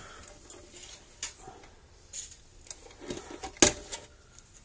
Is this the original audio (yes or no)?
yes